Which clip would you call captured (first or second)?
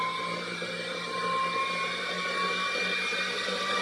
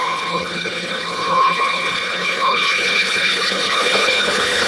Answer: first